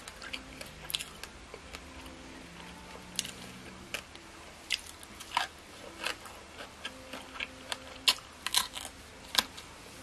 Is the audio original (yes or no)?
yes